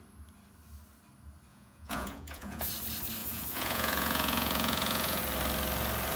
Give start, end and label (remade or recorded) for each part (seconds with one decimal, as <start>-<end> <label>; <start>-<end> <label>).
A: 0.0-1.5 recorded; 1.5-2.7 remade; 2.7-3.2 recorded; 3.2-5.2 remade; 5.2-6.2 recorded